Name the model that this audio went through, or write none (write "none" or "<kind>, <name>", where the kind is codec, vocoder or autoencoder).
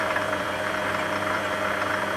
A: vocoder, BigVGAN v2